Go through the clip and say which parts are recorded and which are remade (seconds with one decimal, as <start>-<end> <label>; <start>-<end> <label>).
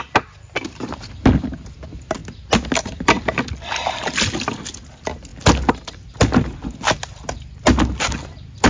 0.0-8.7 recorded